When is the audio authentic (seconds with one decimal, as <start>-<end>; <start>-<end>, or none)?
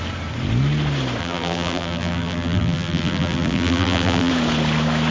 0.0-1.2; 4.3-5.1